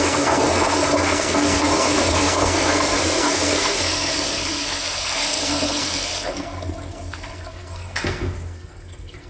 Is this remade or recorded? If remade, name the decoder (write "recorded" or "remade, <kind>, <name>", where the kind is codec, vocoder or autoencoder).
remade, codec, SNAC